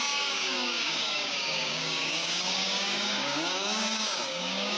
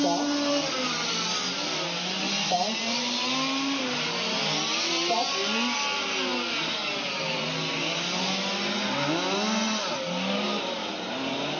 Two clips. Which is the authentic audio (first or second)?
second